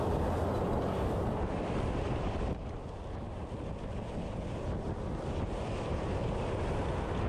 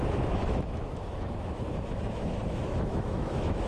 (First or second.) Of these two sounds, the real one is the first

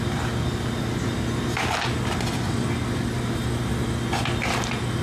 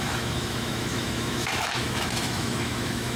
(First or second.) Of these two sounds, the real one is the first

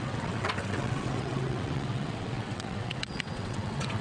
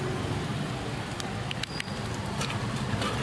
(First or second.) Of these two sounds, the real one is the second